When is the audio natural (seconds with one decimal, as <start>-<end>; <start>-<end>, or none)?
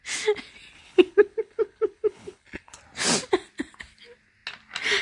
0.0-0.8; 2.8-5.0